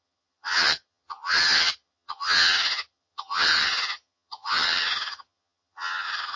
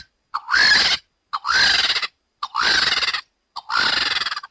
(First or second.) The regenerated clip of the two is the first